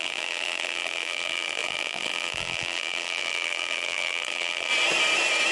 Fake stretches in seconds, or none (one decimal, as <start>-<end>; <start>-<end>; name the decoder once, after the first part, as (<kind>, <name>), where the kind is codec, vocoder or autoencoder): 0.0-4.7 (vocoder, BigVGAN v2)